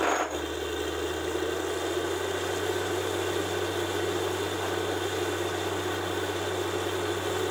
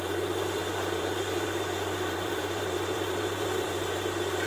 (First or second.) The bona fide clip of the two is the first